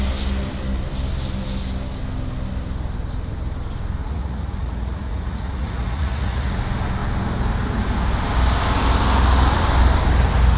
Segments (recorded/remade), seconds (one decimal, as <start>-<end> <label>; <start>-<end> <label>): 0.0-4.0 recorded; 4.0-6.6 remade; 6.6-10.6 recorded